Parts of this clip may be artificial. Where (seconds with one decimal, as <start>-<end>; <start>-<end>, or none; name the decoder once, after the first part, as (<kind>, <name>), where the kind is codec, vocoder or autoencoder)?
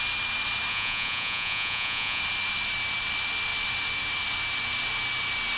0.7-2.2 (vocoder, Vocos)